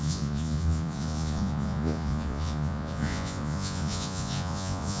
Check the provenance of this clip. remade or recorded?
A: remade